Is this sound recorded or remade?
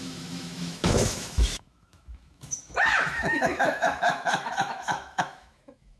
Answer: remade